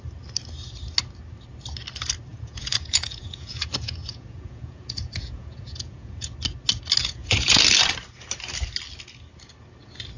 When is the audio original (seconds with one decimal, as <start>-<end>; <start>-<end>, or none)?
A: 0.0-2.3; 6.3-7.0; 7.6-10.2